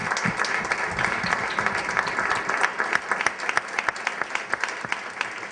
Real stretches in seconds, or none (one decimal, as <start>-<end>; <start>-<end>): 0.0-5.5